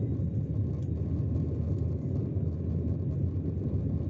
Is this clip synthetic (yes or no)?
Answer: no